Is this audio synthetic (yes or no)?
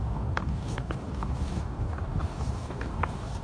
yes